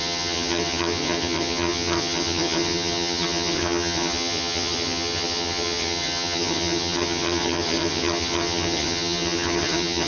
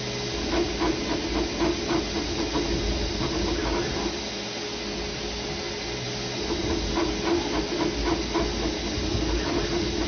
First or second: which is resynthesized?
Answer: first